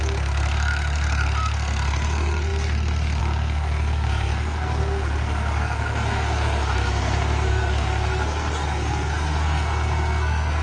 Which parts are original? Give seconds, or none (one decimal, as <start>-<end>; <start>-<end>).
none